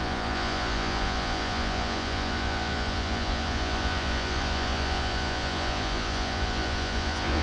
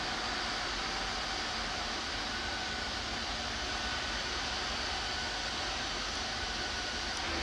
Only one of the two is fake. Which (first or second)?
first